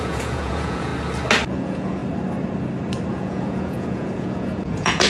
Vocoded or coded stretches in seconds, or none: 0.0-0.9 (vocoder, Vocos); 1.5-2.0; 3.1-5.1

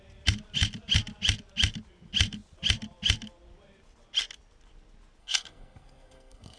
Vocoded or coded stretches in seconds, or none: 5.2-6.6 (codec, SNAC)

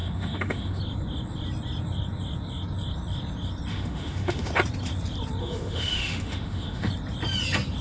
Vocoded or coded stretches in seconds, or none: 0.0-0.8 (autoencoder, DAC-VAE); 3.7-4.5; 5.4-6.9

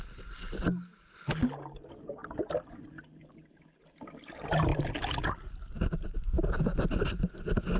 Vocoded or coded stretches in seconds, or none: none

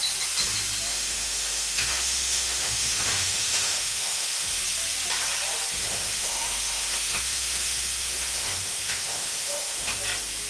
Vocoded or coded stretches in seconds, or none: 0.9-4.6 (autoencoder, DAC-VAE); 5.8-10.0

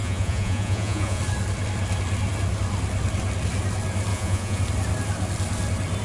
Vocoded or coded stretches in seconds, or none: 0.0-1.2 (vocoder, Vocos); 4.1-4.6